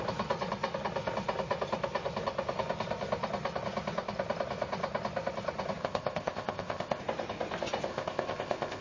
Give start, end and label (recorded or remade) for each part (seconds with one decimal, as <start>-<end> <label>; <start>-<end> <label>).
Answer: 0.0-5.8 recorded; 5.8-7.0 remade; 7.0-7.9 recorded; 7.9-8.8 remade